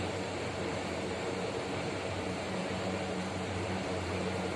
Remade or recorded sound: remade